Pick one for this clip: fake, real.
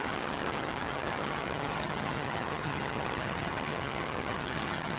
fake